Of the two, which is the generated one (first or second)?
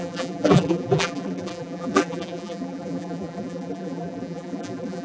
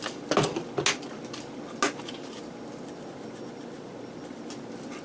first